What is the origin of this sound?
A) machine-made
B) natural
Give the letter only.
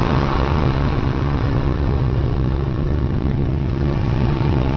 A